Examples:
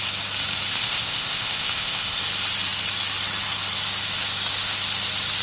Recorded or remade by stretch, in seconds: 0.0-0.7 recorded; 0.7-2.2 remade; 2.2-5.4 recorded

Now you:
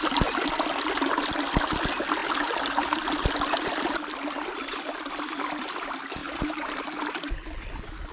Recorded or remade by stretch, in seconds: 0.0-6.2 recorded; 6.2-6.8 remade; 6.8-8.1 recorded

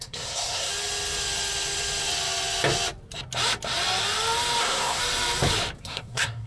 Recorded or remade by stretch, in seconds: 0.0-0.7 remade; 0.7-4.6 recorded; 4.6-5.0 remade; 5.0-5.8 recorded; 5.8-6.5 remade

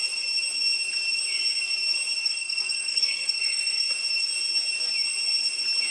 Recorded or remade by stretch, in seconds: 0.0-2.2 recorded; 2.2-3.8 remade; 3.8-5.9 recorded